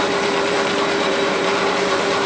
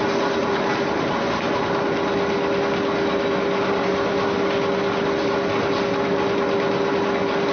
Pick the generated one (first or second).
first